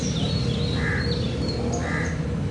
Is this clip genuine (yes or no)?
yes